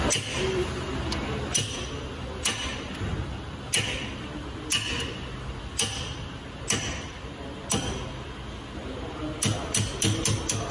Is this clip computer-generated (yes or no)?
no